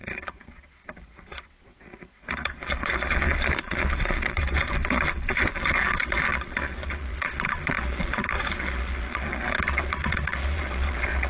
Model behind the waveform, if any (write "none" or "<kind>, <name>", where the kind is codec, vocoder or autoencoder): vocoder, Vocos